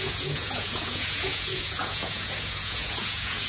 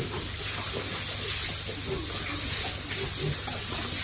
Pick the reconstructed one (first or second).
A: first